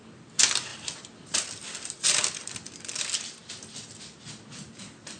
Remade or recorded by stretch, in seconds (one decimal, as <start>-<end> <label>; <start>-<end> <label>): 0.0-0.7 recorded; 0.7-2.9 remade; 2.9-5.2 recorded